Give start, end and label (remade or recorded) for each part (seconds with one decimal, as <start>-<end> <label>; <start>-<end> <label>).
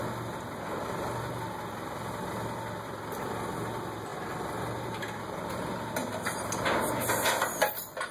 0.0-8.1 recorded